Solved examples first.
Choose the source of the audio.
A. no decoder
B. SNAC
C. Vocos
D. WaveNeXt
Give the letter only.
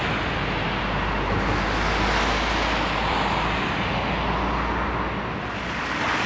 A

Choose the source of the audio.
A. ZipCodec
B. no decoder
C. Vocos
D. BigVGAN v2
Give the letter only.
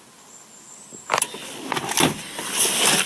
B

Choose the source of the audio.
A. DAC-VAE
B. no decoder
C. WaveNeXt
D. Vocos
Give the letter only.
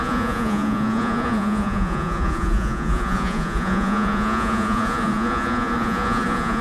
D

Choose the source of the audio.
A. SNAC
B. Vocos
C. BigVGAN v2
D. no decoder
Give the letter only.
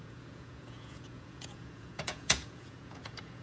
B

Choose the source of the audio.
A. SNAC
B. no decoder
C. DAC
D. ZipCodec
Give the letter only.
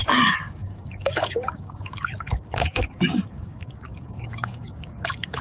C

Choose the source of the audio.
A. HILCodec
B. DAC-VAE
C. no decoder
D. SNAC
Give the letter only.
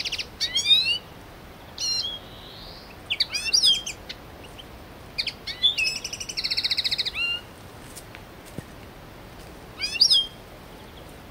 C